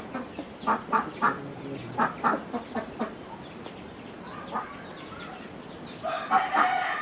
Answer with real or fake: real